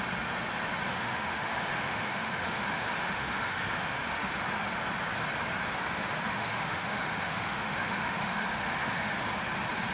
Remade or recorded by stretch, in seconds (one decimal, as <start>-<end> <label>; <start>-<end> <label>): 0.0-0.9 recorded; 0.9-4.4 remade; 4.4-6.3 recorded; 6.3-9.3 remade; 9.3-9.9 recorded